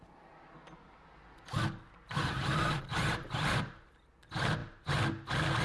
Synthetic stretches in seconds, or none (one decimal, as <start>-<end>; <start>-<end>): 2.2-3.8